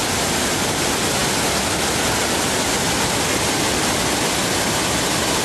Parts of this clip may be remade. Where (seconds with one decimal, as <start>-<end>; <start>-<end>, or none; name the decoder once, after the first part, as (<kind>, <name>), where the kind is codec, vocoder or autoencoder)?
none